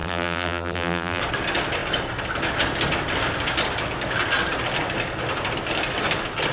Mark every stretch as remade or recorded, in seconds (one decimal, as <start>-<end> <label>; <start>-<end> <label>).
0.0-1.2 remade; 1.2-6.5 recorded